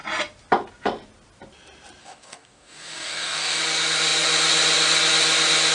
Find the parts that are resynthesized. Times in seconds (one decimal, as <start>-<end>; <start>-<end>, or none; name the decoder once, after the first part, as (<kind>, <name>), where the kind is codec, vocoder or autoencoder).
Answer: 2.0-3.6 (codec, DAC)